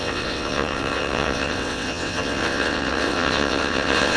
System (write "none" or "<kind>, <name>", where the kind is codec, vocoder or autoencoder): vocoder, WaveNeXt